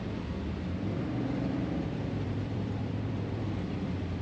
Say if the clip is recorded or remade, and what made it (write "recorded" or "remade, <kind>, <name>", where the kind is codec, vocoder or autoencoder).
remade, vocoder, BigVGAN v2